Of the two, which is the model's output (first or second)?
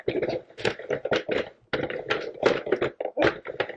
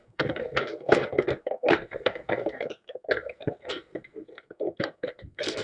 second